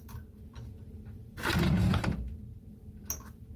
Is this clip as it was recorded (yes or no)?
yes